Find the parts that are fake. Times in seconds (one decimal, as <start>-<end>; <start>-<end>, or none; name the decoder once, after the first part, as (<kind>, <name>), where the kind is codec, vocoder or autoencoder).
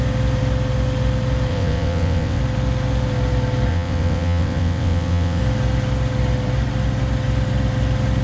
1.5-2.4 (vocoder, WaveNeXt); 3.7-5.4